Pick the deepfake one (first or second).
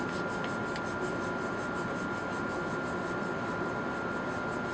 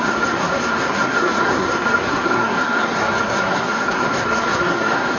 second